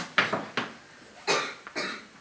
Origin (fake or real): real